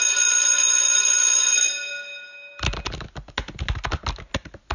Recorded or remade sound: recorded